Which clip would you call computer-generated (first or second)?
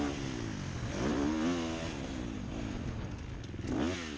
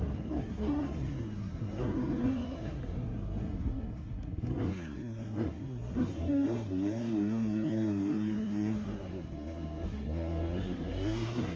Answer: second